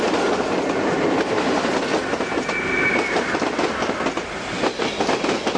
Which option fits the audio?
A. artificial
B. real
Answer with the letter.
B